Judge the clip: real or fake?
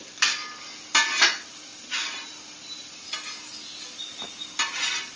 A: real